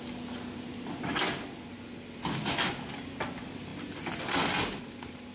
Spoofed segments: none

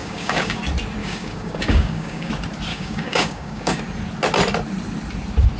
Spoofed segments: 0.0-0.6 (codec, DAC); 1.0-2.3; 2.7-3.8

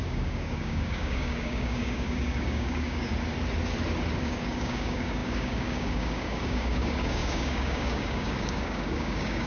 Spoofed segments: 0.0-3.1 (codec, DAC); 4.2-9.5

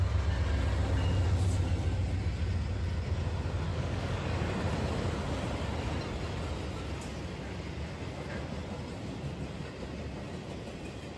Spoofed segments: 3.7-4.4 (codec, DAC)

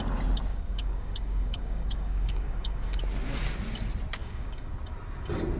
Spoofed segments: 0.5-3.0 (codec, DAC); 4.2-4.8

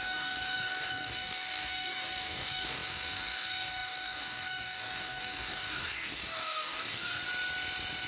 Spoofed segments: 0.0-7.2 (codec, DAC)

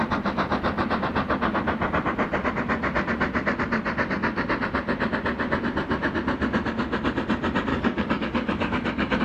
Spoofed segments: 7.7-9.2 (codec, DAC)